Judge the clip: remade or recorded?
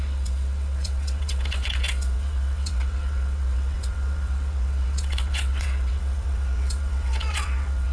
remade